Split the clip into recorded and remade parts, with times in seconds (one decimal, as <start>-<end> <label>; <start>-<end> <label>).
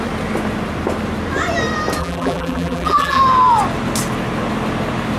0.0-2.0 recorded; 2.0-3.2 remade; 3.2-5.2 recorded